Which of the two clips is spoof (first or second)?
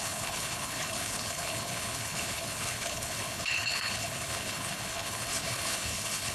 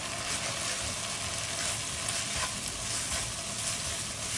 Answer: first